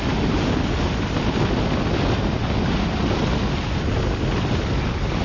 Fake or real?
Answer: real